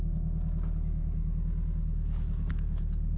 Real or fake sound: real